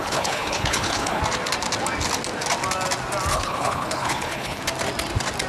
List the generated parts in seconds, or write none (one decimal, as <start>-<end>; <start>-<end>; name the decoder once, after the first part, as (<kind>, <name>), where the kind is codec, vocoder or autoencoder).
0.0-1.2 (codec, HILCodec); 3.3-4.6